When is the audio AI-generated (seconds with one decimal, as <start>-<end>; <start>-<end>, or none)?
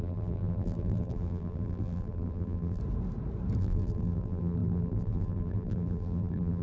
0.0-2.8; 3.6-6.6